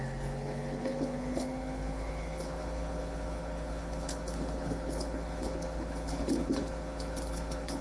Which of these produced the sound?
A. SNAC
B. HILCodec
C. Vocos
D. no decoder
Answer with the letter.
B